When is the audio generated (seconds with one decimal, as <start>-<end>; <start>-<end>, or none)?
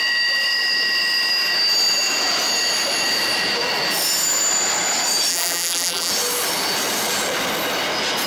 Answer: 5.3-6.1